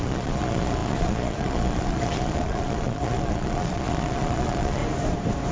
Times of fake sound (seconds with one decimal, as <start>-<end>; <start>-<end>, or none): 0.0-4.8